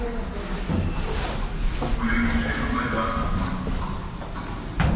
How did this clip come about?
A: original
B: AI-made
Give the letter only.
A